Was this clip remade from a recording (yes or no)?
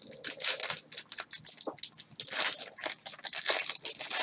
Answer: no